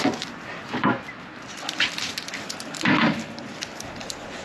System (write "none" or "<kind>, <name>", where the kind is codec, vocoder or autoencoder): none